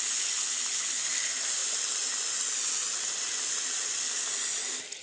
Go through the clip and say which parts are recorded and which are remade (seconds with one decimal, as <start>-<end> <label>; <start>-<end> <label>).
0.0-5.0 recorded